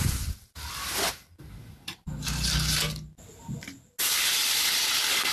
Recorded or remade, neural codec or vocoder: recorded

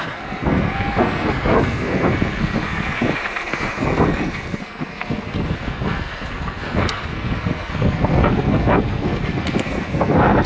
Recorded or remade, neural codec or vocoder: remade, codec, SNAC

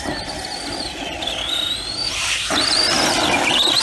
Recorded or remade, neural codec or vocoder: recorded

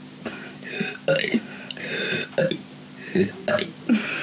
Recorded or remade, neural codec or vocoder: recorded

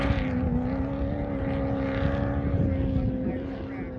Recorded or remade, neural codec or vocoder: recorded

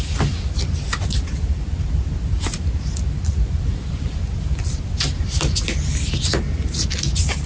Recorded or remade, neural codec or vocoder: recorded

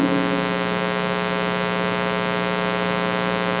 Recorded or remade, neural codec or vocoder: recorded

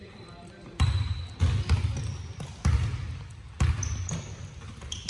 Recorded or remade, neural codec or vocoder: recorded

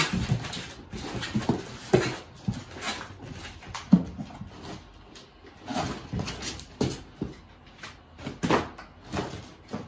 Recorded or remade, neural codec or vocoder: recorded